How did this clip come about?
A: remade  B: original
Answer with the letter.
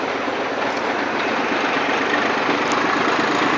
B